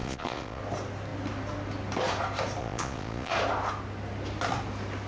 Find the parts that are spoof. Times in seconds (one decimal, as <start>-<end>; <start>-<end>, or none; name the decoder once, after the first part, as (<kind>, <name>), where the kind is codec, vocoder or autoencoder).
0.0-0.6 (vocoder, Vocos); 2.6-3.3